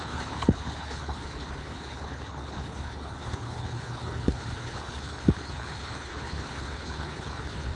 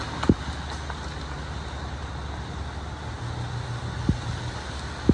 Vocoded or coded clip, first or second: first